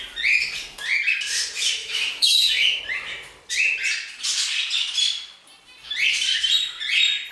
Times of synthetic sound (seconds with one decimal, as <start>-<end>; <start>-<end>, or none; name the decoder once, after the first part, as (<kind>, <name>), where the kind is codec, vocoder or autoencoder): 1.8-2.8 (autoencoder, DAC-VAE)